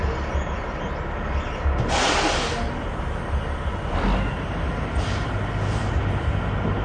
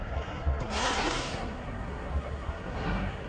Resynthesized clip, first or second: second